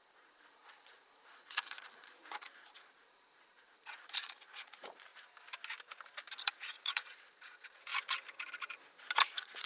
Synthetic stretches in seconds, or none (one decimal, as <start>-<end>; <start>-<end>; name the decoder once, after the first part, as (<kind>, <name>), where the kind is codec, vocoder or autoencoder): 0.0-5.1 (vocoder, Vocos); 6.5-7.9; 9.2-9.7